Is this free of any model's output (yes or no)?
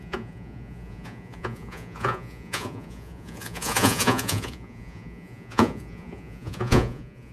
no